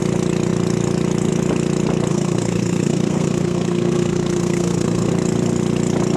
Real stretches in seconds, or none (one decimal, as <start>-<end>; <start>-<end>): 0.0-2.1; 5.1-6.2